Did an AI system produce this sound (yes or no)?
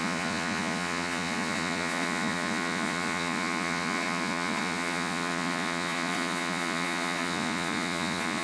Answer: yes